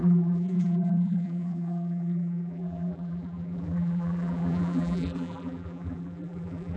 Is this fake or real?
fake